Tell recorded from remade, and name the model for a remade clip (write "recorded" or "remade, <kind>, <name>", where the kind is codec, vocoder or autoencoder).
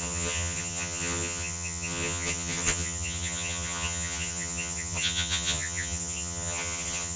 remade, vocoder, HiFi-GAN